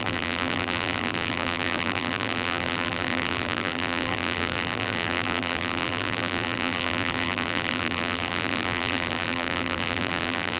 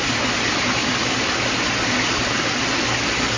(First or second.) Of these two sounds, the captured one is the second